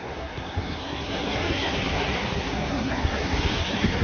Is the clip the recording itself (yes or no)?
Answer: no